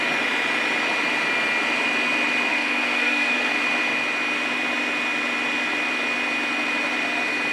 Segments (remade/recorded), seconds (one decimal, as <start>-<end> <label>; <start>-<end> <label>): 0.0-2.5 recorded; 2.5-3.5 remade; 3.5-7.5 recorded